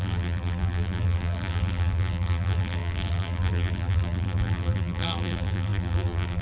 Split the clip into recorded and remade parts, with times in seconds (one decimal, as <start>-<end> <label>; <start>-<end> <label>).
0.0-6.4 remade